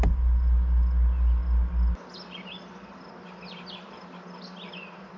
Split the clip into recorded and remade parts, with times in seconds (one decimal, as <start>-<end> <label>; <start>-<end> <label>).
0.0-5.2 recorded